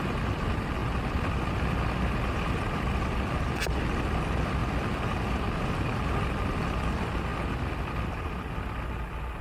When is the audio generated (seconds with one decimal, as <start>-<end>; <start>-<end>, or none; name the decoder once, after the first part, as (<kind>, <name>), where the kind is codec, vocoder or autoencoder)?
none